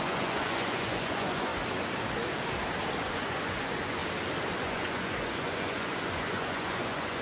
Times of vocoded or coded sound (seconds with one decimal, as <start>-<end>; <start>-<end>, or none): 0.0-1.5; 3.1-4.0; 4.6-7.2